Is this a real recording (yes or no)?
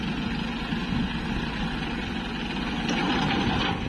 yes